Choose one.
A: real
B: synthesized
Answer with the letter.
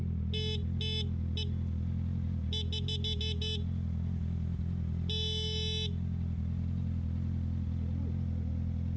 A